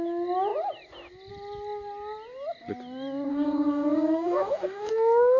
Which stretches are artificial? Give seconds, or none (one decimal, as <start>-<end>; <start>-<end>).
3.3-4.9